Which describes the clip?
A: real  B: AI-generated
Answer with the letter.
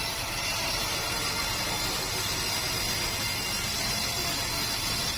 A